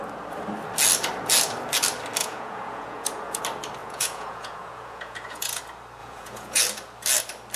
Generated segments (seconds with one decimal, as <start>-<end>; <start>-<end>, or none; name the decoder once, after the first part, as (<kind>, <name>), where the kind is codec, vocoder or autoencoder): 2.2-3.4 (vocoder, Vocos); 3.8-5.6; 6.0-6.6